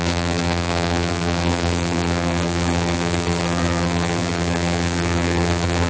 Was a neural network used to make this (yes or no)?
yes